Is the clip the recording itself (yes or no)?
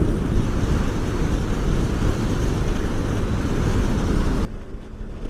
yes